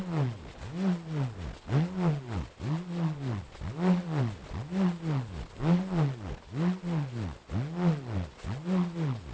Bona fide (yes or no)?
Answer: yes